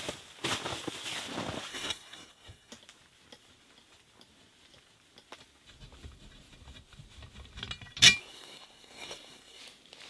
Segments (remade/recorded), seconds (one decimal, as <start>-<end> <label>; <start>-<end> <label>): 0.0-1.7 recorded; 1.7-2.7 remade; 2.7-8.2 recorded; 8.2-9.6 remade; 9.6-10.1 recorded